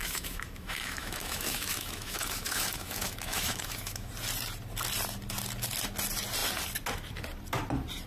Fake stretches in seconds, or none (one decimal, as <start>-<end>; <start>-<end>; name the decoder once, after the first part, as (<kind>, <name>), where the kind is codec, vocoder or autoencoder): 0.0-4.1 (autoencoder, DAC-VAE)